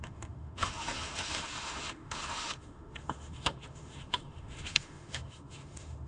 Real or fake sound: fake